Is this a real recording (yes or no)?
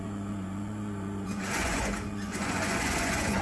no